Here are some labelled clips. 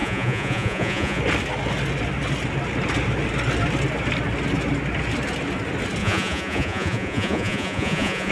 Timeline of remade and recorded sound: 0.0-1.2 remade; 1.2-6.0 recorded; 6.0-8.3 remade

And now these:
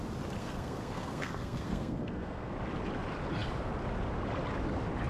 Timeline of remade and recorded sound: 0.0-0.4 recorded; 0.4-2.5 remade; 2.5-5.1 recorded

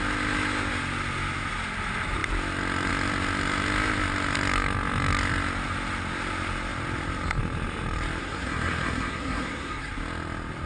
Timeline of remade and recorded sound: 0.0-8.2 recorded; 8.2-9.9 remade; 9.9-10.7 recorded

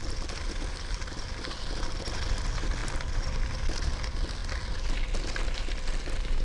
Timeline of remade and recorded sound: 0.0-6.4 recorded

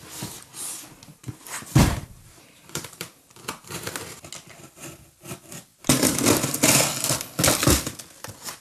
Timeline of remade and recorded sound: 0.0-1.1 recorded; 1.1-3.9 remade; 3.9-5.7 recorded; 5.7-6.2 remade; 6.2-8.6 recorded

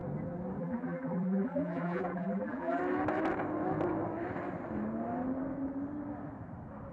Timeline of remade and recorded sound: 0.0-0.6 recorded; 0.6-2.8 remade; 2.8-6.9 recorded